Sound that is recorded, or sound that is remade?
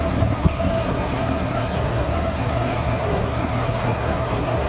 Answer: remade